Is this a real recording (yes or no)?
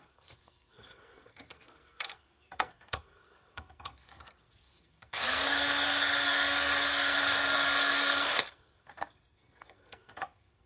no